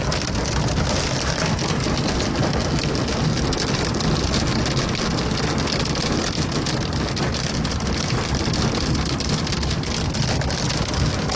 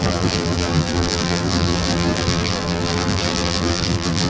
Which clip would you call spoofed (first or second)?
second